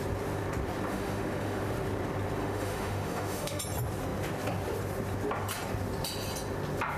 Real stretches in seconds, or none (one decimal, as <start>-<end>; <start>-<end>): 0.0-0.9; 1.6-2.4; 3.6-7.0